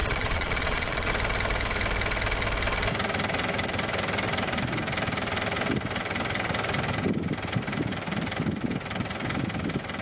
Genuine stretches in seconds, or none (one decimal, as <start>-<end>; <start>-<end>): 1.1-10.0